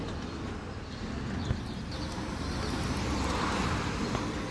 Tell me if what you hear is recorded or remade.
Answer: recorded